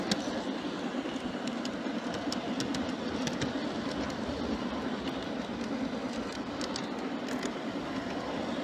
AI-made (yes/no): no